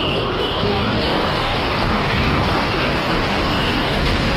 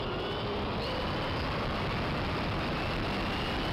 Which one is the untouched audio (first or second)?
second